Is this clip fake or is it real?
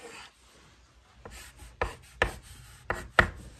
real